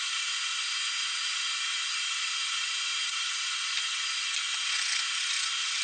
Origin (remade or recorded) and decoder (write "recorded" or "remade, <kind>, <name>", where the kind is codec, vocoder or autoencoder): recorded